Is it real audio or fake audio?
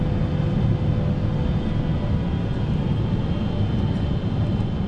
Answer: real